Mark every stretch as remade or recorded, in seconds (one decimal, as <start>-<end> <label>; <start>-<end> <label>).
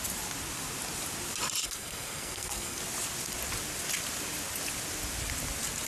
0.0-1.6 recorded; 1.6-2.8 remade; 2.8-5.9 recorded